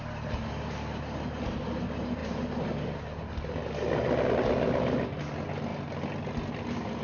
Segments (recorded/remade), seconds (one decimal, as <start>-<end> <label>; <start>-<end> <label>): 0.0-7.0 recorded